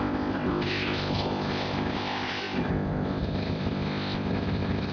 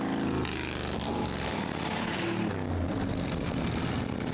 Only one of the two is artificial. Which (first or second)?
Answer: first